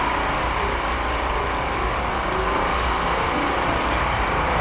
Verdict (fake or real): real